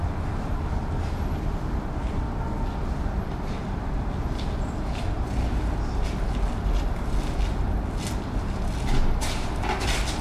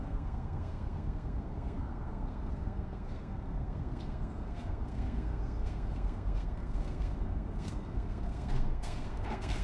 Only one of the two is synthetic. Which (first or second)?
second